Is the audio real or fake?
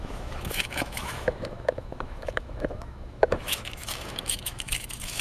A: fake